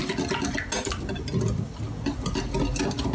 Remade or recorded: recorded